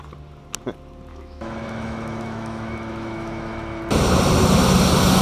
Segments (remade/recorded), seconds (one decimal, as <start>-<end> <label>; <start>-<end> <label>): 0.0-1.1 recorded; 1.1-3.8 remade; 3.8-5.2 recorded